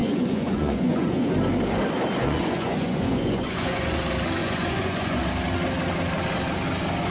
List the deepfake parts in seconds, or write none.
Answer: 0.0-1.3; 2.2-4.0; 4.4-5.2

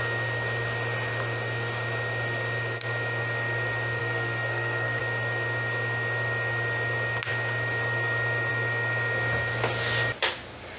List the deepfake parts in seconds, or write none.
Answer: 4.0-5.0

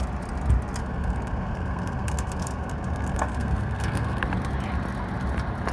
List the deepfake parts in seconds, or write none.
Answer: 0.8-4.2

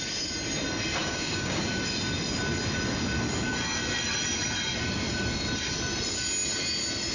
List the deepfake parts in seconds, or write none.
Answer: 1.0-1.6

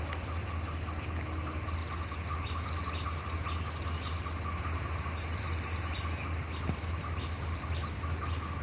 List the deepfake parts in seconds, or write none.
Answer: none